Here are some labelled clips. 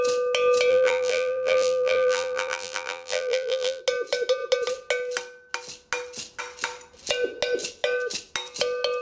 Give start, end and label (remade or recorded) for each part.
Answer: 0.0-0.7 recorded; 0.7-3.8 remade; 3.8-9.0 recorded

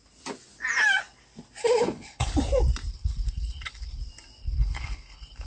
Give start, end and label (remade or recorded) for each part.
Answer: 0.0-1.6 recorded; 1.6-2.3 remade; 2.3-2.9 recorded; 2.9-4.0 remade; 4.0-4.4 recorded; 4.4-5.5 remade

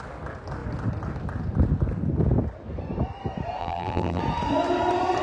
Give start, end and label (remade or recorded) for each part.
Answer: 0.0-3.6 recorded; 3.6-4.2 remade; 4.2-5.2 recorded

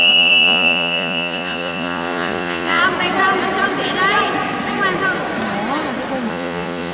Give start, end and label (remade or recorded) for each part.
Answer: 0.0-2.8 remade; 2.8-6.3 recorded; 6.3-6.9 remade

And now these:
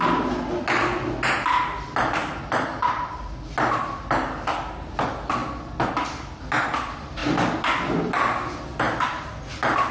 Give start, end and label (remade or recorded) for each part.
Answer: 0.0-9.9 recorded

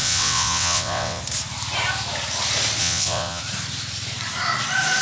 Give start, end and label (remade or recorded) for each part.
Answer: 0.0-1.2 remade; 1.2-2.8 recorded; 2.8-3.4 remade; 3.4-5.0 recorded

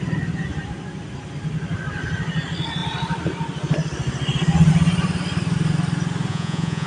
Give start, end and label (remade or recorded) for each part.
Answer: 0.0-6.3 recorded; 6.3-6.9 remade

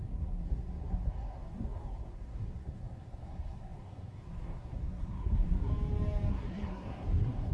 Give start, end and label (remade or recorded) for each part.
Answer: 0.0-5.7 remade; 5.7-6.3 recorded; 6.3-7.5 remade